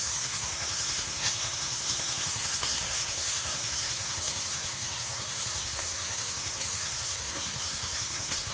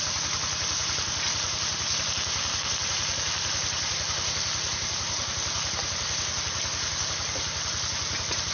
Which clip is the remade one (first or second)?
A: first